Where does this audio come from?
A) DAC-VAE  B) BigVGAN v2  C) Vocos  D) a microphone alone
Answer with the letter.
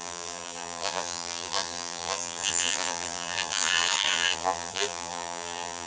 B